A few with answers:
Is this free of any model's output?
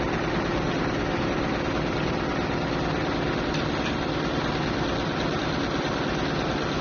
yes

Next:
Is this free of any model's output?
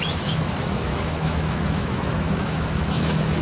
no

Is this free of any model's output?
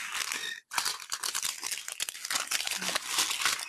yes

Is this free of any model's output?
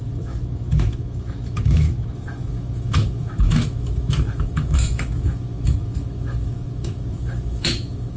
no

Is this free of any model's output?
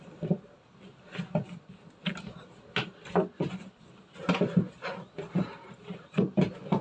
yes